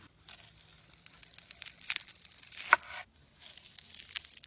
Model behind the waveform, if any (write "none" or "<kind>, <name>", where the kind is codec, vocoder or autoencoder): none